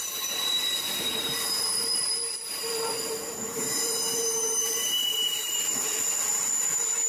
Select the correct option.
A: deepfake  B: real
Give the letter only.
A